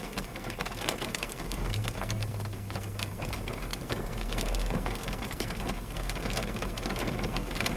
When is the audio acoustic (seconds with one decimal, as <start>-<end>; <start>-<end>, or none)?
none